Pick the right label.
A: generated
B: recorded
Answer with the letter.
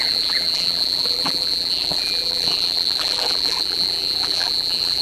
A